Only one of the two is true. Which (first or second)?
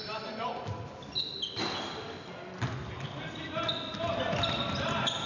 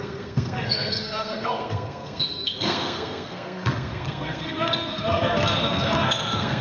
first